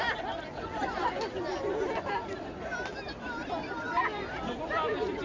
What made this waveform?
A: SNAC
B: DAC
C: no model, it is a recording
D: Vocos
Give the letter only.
C